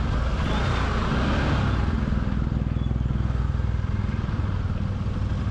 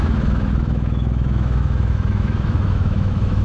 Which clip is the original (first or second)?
first